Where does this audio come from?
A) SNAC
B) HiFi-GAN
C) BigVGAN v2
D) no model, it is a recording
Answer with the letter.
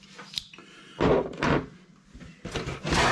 D